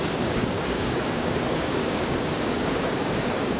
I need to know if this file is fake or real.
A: fake